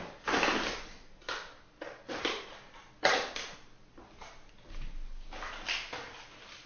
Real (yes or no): yes